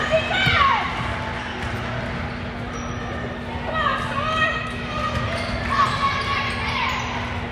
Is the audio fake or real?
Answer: real